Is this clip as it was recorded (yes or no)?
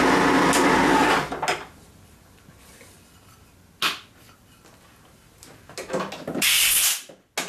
yes